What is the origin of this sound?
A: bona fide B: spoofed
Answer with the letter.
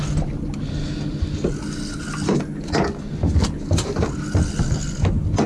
A